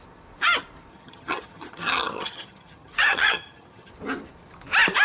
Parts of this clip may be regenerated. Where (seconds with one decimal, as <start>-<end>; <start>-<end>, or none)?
0.9-3.9